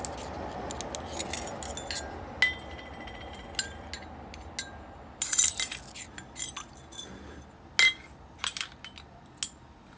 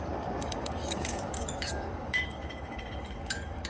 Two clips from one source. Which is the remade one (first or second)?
second